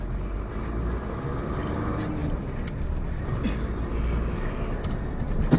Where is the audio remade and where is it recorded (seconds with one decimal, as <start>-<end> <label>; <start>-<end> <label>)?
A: 0.0-5.6 recorded